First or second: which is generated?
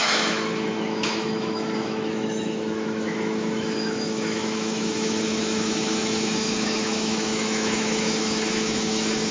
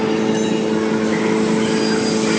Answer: first